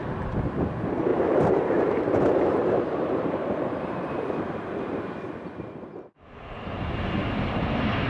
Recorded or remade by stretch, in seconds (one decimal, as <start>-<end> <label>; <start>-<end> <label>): 0.0-1.1 recorded; 1.1-5.1 remade; 5.1-8.1 recorded